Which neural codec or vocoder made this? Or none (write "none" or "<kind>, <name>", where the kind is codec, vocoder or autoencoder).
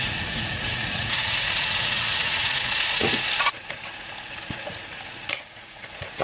vocoder, Vocos